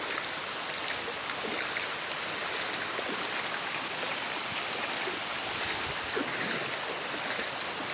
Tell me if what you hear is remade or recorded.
recorded